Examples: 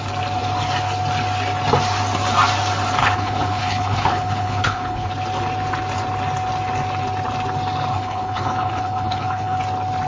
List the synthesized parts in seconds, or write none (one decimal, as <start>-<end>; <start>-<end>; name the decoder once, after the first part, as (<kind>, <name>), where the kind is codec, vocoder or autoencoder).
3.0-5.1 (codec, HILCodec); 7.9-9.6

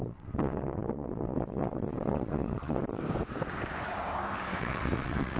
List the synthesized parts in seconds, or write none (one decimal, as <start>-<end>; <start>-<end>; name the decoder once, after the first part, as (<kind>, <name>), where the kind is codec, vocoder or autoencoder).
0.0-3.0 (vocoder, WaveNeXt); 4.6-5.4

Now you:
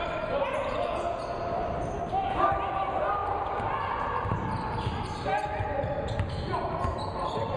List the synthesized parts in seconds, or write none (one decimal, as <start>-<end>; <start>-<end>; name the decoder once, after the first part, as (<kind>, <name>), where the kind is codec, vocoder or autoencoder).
0.6-1.2 (vocoder, Vocos)

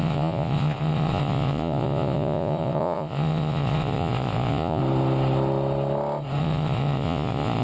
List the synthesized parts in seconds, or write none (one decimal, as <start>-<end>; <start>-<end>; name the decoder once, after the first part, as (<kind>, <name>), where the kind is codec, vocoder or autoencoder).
0.0-4.8 (vocoder, Vocos); 6.4-7.6

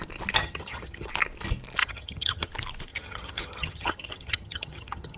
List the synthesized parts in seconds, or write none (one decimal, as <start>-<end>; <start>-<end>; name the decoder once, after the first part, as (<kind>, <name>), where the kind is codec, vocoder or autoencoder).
0.4-1.1 (vocoder, HiFi-GAN); 1.8-2.5; 2.9-5.2

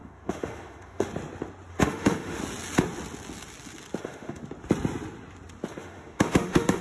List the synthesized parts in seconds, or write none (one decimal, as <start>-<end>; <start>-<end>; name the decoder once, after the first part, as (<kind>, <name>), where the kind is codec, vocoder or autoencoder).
0.0-1.1 (autoencoder, DAC-VAE); 1.7-2.4; 4.0-4.4; 5.7-6.8